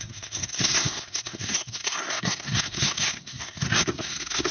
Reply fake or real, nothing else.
fake